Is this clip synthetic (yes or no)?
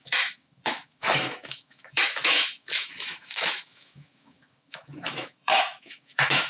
yes